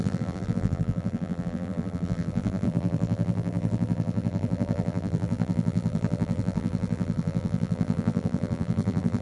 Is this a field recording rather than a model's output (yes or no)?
no